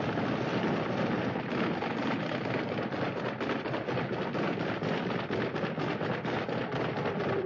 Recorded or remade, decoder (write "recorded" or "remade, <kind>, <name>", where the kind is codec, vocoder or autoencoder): remade, vocoder, BigVGAN v2